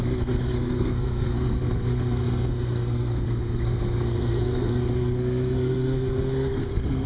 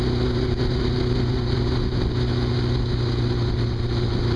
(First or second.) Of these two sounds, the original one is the second